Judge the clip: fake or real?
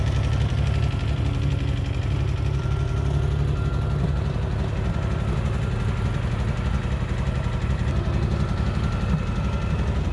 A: real